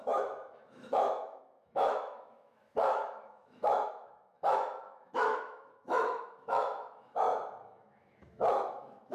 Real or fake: fake